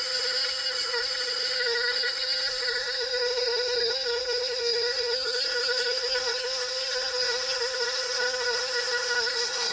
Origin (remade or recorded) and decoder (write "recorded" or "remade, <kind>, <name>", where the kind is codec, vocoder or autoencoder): remade, codec, SNAC